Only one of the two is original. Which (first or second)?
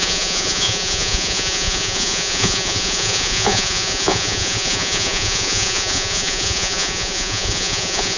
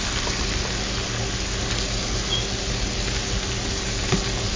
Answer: second